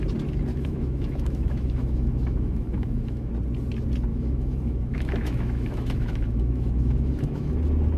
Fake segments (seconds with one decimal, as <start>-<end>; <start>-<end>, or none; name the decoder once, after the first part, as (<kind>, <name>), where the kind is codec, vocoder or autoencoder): 0.5-3.3 (autoencoder, DAC-VAE); 4.1-7.5